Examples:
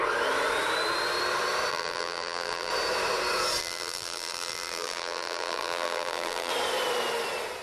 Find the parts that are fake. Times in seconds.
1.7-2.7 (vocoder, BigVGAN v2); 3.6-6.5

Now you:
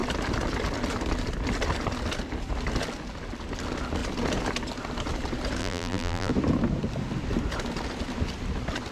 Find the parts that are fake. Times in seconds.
5.6-6.3 (vocoder, BigVGAN v2)